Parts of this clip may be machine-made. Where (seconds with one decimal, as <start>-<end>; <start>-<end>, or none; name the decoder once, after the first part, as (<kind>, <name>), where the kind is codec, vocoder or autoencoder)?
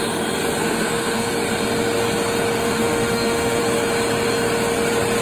0.6-1.3 (autoencoder, DAC-VAE); 2.6-3.6